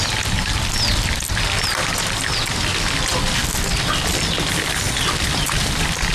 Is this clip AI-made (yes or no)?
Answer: no